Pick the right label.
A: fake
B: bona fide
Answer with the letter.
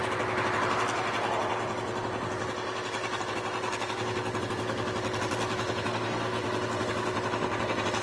B